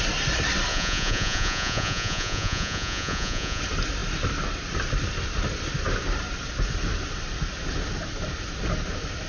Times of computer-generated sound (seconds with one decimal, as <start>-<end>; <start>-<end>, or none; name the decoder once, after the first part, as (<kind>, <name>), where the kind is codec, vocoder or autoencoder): 0.7-3.6 (vocoder, Vocos)